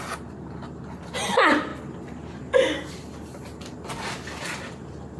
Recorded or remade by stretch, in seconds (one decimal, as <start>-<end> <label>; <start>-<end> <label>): 0.0-5.2 recorded